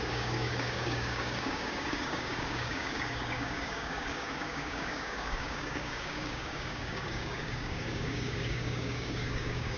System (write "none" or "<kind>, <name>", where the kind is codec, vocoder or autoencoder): codec, DAC